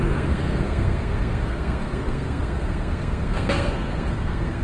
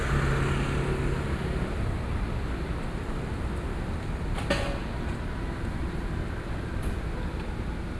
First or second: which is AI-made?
first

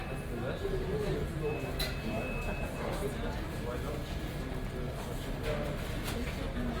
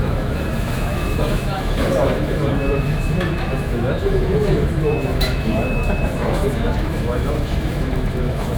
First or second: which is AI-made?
second